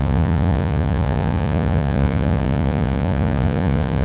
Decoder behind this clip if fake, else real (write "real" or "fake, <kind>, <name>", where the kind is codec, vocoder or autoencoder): fake, vocoder, Vocos